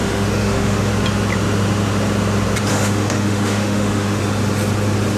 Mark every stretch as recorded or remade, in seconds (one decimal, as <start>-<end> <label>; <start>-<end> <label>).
0.0-0.9 remade; 0.9-2.7 recorded; 2.7-4.2 remade; 4.2-5.2 recorded